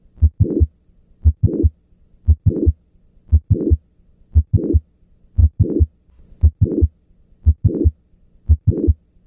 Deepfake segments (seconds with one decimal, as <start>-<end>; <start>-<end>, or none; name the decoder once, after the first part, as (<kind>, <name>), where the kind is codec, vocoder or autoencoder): none